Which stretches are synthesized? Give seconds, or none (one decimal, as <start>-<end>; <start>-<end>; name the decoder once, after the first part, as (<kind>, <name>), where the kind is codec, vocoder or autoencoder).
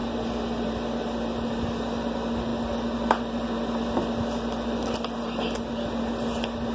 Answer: none